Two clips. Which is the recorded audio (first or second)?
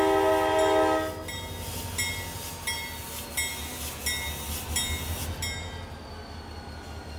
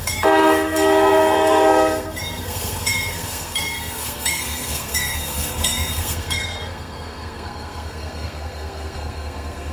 first